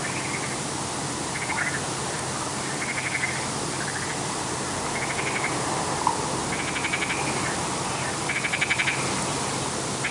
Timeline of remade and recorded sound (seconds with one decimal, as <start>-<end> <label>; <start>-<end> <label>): 0.0-10.1 recorded